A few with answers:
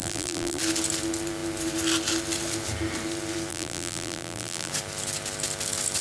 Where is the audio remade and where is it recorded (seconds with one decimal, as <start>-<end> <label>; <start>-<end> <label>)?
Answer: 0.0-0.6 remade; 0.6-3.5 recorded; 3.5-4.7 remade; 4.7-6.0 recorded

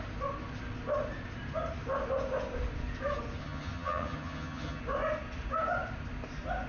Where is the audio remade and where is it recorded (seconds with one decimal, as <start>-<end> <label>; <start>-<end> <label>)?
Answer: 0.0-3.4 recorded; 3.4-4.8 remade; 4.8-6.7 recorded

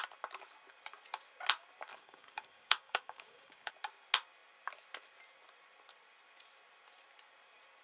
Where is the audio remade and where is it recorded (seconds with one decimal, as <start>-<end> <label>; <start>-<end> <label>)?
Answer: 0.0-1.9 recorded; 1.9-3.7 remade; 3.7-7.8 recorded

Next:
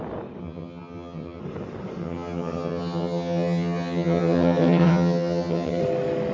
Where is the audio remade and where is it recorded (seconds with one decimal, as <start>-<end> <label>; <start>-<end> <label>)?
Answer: 0.0-0.4 recorded; 0.4-1.4 remade; 1.4-2.0 recorded; 2.0-5.8 remade; 5.8-6.3 recorded